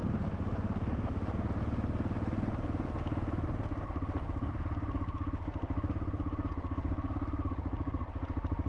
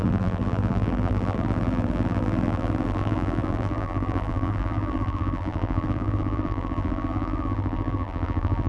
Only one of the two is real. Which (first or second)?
first